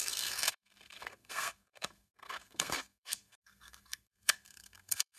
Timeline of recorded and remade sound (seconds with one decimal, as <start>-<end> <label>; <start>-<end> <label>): 0.0-5.2 remade